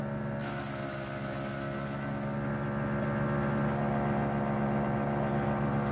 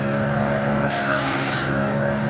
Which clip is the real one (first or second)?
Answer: first